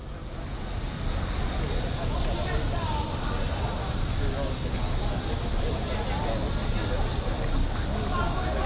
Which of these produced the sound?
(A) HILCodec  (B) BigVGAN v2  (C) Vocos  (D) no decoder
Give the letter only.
D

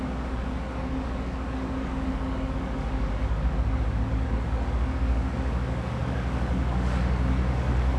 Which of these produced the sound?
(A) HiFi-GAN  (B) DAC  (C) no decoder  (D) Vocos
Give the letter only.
B